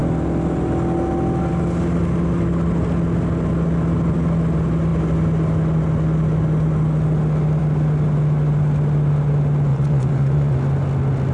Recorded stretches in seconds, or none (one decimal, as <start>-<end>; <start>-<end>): 0.0-9.7; 10.6-11.3